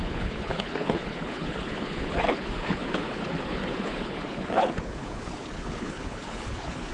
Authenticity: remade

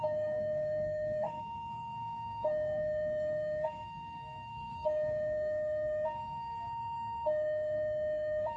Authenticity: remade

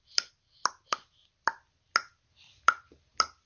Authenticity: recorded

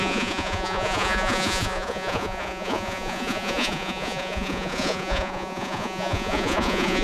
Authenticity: remade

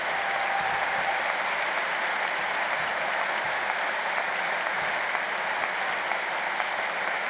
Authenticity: remade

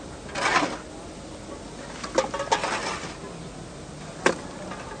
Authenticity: recorded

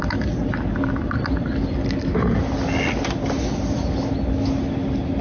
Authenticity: recorded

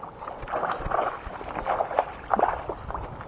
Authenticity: recorded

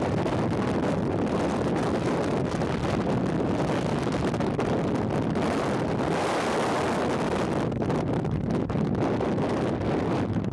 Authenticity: recorded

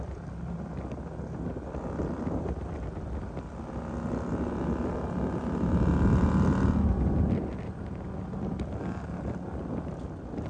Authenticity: recorded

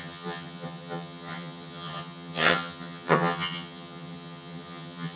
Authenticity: remade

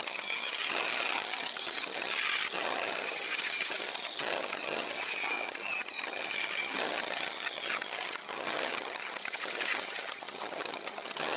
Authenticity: remade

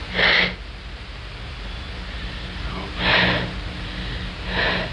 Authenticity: recorded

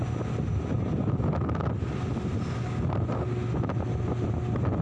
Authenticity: recorded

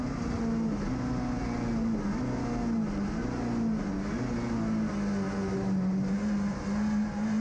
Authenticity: recorded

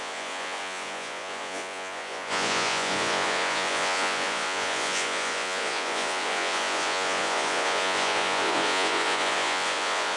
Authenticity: remade